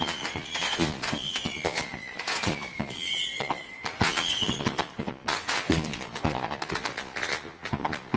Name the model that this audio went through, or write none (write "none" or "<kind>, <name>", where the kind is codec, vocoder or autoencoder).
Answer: vocoder, Vocos